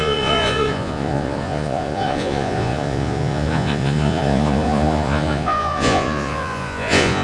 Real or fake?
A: fake